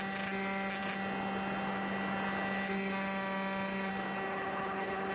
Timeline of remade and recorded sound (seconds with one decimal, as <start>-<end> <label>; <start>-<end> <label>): 0.0-4.3 recorded; 4.3-5.1 remade